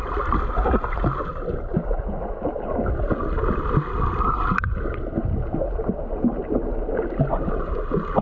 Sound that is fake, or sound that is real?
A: real